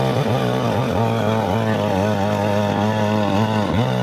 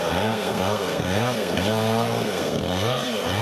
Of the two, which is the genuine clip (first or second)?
first